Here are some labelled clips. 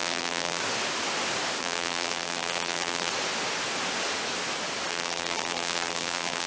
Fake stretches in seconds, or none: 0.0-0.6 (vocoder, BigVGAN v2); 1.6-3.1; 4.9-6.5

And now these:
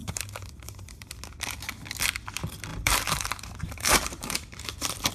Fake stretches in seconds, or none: 0.0-1.1 (vocoder, BigVGAN v2); 2.7-5.1

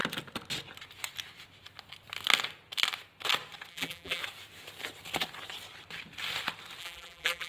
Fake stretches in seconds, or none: 3.7-4.2 (vocoder, BigVGAN v2); 6.8-7.5

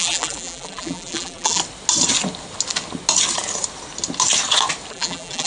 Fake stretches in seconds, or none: 0.0-1.6 (vocoder, BigVGAN v2); 4.9-5.5

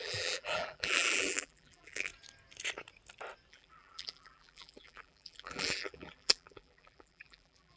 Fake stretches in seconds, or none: 0.0-2.1 (vocoder, BigVGAN v2); 3.5-7.8